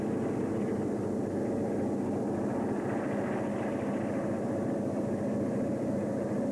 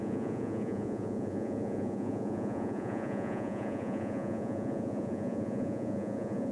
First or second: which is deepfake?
second